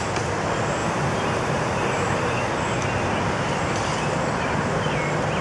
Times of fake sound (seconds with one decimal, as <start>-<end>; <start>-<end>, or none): 0.8-2.5